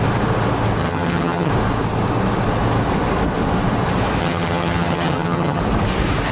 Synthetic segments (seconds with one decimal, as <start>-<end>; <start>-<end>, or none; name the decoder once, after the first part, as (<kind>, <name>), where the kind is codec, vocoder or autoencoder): 0.8-1.5 (vocoder, HiFi-GAN); 4.2-5.6